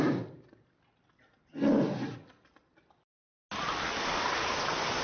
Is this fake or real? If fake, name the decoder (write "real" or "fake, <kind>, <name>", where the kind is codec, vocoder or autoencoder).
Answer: real